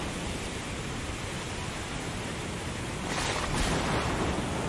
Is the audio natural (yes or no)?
yes